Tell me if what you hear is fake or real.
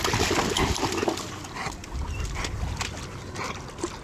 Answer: real